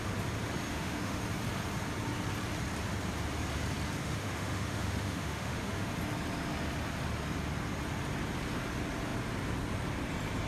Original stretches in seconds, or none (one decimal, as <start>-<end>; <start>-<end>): 0.0-0.7; 1.2-4.0; 5.9-10.5